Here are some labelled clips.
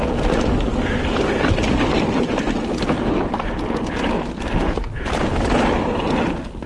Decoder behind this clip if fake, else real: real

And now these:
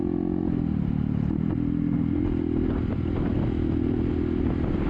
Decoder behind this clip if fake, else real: real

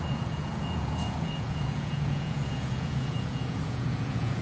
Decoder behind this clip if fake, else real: fake, vocoder, Vocos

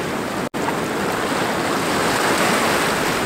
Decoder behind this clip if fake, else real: real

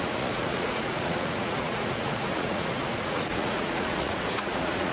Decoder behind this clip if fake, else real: fake, vocoder, Vocos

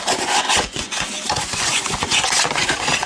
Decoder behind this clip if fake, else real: fake, vocoder, Vocos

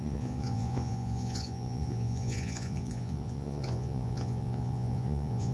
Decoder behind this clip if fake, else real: fake, vocoder, Vocos